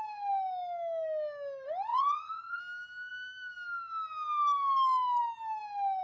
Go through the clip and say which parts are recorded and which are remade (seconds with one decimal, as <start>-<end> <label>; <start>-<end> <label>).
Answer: 0.0-1.9 recorded; 1.9-2.6 remade; 2.6-6.0 recorded